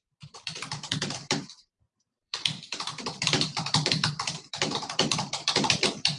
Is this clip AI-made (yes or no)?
yes